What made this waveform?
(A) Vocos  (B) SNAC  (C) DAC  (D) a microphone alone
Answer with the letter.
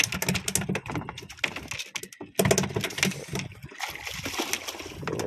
D